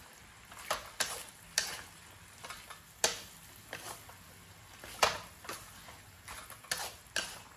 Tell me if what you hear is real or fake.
real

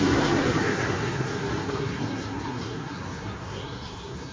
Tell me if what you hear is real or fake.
fake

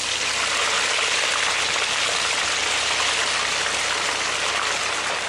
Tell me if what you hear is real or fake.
real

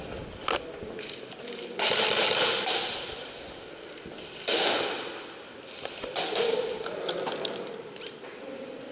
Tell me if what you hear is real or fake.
real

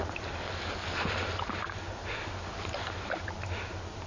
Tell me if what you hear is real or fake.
real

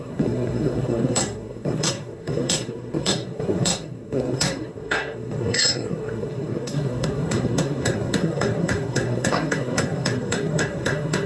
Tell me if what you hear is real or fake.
fake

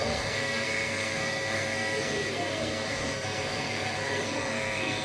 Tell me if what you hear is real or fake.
fake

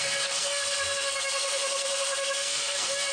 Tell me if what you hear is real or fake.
fake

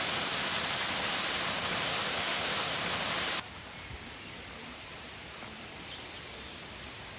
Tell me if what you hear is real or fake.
real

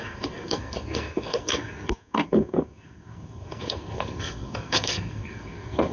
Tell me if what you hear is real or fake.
fake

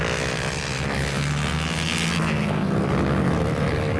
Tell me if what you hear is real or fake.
real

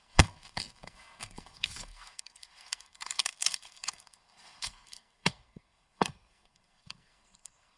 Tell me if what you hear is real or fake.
fake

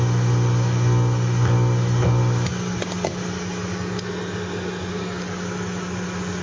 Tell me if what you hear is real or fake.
real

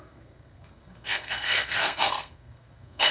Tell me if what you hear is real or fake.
fake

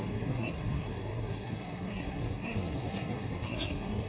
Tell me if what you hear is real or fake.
fake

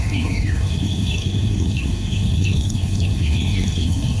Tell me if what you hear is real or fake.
fake